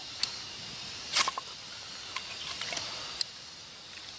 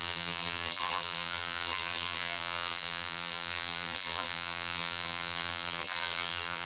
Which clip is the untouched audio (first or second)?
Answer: first